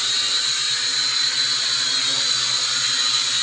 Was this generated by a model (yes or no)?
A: no